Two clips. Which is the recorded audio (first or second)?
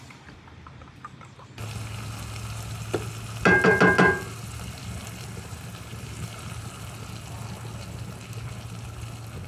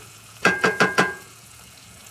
first